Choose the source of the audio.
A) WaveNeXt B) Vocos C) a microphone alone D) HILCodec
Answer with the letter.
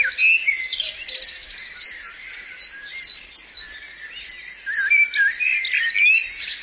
C